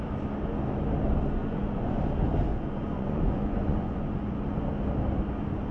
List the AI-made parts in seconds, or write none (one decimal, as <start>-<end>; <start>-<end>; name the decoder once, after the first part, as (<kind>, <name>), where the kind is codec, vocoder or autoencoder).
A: 1.4-2.0 (vocoder, Vocos); 2.5-4.7